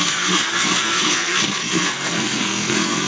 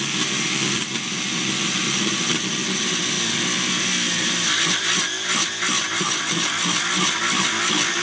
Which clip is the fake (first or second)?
first